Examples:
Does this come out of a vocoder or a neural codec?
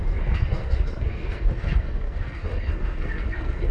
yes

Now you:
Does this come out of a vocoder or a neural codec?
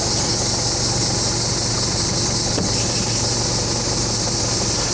no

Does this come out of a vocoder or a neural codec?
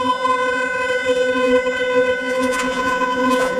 yes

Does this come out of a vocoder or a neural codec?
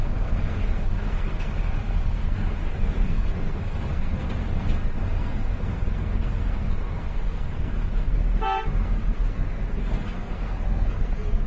yes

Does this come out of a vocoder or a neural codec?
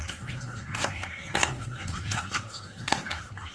yes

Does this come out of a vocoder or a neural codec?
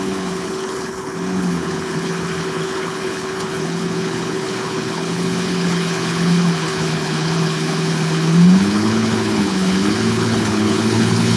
yes